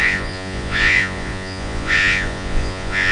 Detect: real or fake fake